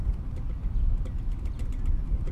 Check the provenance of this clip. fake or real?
real